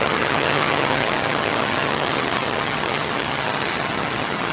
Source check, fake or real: fake